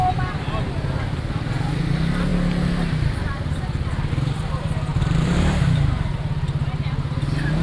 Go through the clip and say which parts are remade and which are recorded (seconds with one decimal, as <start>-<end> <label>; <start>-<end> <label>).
0.0-4.9 recorded; 4.9-6.1 remade; 6.1-7.6 recorded